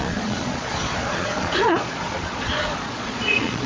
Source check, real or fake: fake